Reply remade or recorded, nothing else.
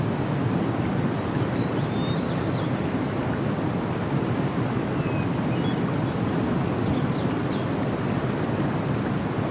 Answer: recorded